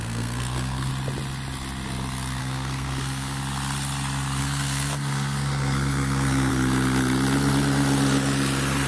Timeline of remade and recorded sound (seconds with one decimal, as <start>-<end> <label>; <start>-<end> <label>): 0.0-0.9 remade; 0.9-2.4 recorded; 2.4-3.4 remade; 3.4-4.4 recorded; 4.4-6.5 remade; 6.5-8.9 recorded